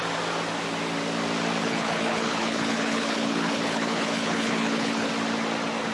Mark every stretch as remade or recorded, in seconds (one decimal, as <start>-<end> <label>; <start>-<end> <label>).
0.0-1.6 recorded; 1.6-5.1 remade; 5.1-5.9 recorded